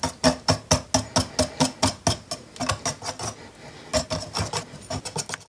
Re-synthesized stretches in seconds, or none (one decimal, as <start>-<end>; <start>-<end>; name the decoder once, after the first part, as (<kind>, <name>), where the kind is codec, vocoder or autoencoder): none